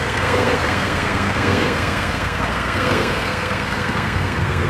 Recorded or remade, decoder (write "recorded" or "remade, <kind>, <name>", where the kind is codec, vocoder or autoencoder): remade, codec, SNAC